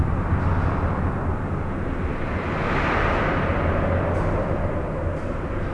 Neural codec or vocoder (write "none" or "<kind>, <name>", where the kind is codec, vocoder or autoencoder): none